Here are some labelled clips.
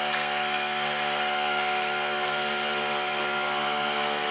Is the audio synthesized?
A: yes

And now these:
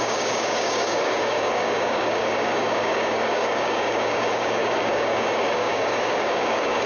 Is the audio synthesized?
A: yes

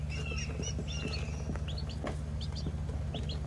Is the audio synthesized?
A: no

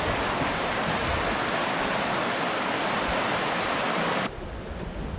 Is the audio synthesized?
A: no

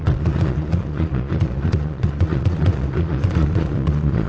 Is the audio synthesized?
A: yes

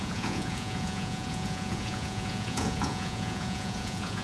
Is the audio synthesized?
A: yes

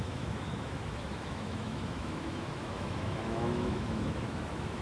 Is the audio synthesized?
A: yes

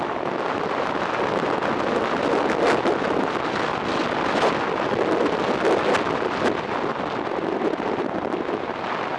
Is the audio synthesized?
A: no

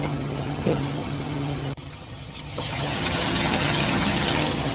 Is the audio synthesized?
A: yes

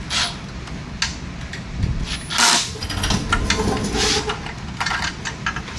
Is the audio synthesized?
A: no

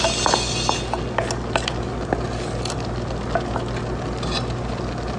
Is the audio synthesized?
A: no